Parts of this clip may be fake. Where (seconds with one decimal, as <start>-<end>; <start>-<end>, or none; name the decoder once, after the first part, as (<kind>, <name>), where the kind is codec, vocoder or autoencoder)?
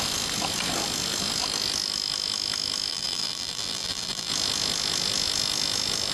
2.9-4.3 (vocoder, BigVGAN v2)